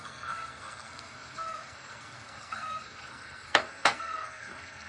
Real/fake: fake